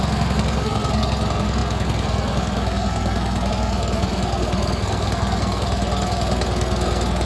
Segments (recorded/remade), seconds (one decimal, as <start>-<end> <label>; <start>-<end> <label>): 0.0-7.3 remade